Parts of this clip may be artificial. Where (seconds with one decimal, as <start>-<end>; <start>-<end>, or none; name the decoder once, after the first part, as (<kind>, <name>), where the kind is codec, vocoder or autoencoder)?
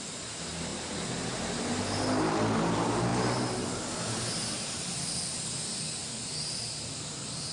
none